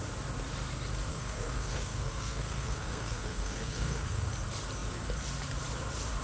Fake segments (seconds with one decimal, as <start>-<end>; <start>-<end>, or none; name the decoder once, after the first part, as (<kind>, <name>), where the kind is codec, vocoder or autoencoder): 1.1-4.3 (codec, SNAC)